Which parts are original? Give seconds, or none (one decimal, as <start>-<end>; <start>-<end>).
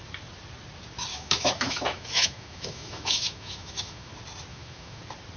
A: 0.0-1.1; 4.1-4.5; 5.0-5.4